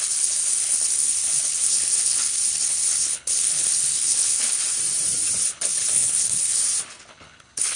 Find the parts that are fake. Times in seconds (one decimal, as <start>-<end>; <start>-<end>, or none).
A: 0.0-4.6; 5.5-6.6; 7.1-7.8